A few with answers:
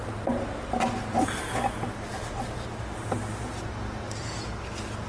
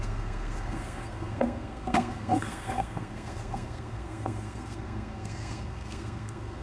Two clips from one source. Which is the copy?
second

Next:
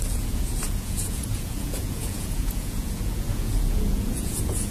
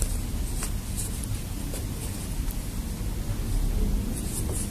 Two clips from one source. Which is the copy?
first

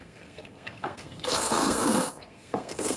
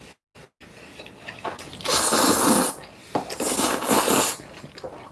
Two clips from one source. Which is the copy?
first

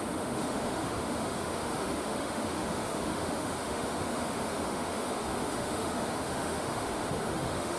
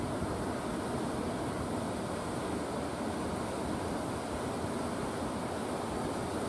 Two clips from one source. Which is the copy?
first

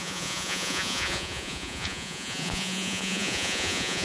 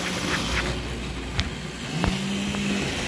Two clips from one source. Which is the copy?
first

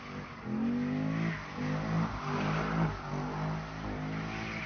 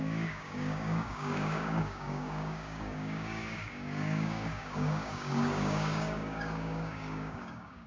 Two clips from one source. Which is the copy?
second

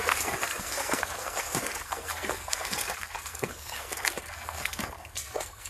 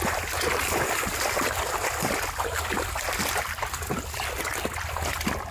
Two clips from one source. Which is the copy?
first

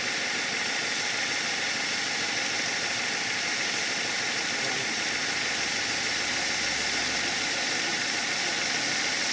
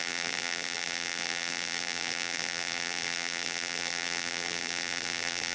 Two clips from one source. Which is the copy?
second